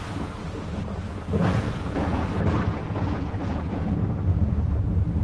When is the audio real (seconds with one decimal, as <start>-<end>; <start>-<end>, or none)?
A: 0.0-1.3; 2.3-2.8; 3.9-5.2